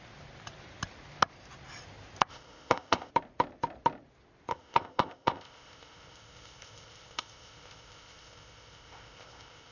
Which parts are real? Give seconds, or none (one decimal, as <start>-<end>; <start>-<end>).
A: 0.0-2.3; 3.1-4.5